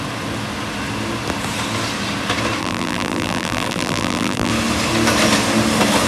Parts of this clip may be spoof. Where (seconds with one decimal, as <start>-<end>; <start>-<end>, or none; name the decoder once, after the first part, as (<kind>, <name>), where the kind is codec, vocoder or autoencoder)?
2.6-4.5 (vocoder, BigVGAN v2)